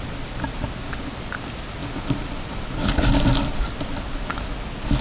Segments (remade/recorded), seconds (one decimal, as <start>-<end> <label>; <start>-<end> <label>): 0.0-5.0 recorded